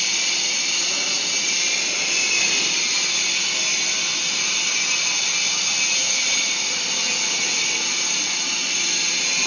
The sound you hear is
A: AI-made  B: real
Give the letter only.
B